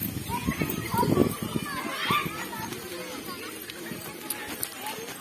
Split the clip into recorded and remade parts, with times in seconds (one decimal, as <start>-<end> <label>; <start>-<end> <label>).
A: 0.0-5.2 recorded